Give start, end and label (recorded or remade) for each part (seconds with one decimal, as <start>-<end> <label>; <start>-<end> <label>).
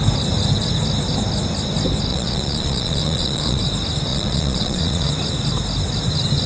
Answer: 0.0-2.1 recorded; 2.1-3.6 remade; 3.6-4.1 recorded; 4.1-5.1 remade; 5.1-6.5 recorded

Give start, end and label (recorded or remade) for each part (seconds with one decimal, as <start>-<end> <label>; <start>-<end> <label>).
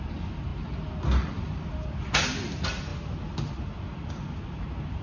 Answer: 0.0-5.0 recorded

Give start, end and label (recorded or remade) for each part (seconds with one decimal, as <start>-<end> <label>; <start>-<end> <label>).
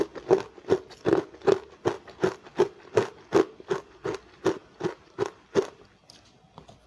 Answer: 0.0-6.9 recorded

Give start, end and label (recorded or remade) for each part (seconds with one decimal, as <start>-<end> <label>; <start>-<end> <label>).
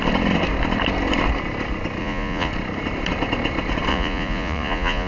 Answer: 0.0-2.0 recorded; 2.0-2.5 remade; 2.5-3.9 recorded; 3.9-5.1 remade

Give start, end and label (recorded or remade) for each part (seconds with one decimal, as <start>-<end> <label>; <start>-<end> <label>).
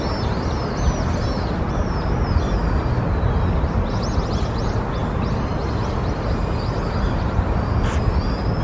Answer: 0.0-8.6 recorded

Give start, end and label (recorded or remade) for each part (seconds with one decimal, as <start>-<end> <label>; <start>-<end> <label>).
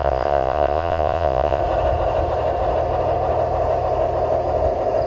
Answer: 0.0-1.6 remade; 1.6-5.1 recorded